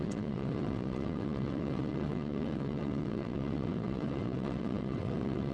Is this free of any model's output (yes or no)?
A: no